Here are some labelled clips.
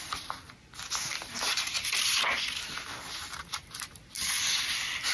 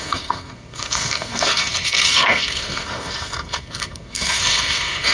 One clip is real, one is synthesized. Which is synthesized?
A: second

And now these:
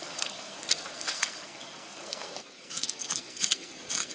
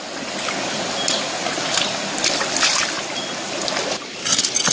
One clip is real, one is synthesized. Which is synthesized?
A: first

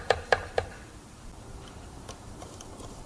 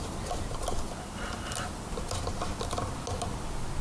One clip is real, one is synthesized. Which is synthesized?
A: first